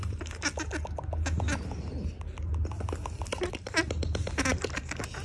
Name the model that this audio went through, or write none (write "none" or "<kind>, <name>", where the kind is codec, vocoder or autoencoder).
none